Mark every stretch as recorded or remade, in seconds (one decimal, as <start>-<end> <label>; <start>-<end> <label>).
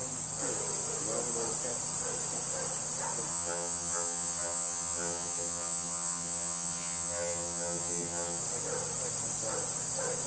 0.0-3.3 recorded; 3.3-8.4 remade; 8.4-10.3 recorded